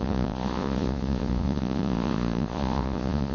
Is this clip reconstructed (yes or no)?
yes